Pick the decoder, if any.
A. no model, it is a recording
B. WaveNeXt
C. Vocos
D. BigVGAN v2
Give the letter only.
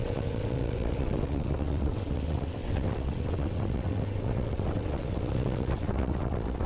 B